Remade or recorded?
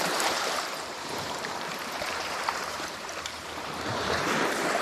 remade